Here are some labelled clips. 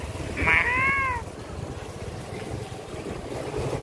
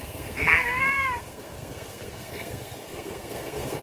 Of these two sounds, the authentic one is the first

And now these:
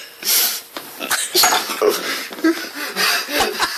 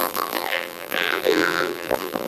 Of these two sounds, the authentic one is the first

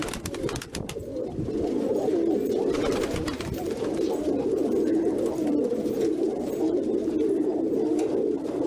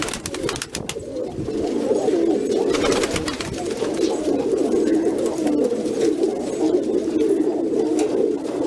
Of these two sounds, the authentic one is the second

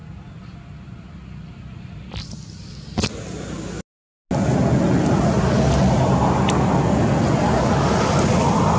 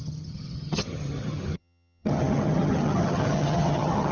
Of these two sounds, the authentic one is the first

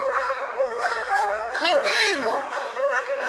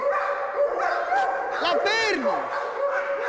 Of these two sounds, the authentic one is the second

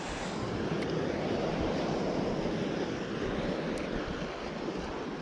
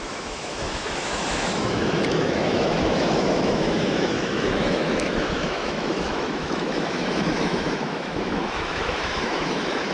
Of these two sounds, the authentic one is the first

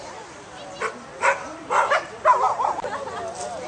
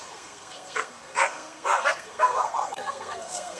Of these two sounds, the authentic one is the first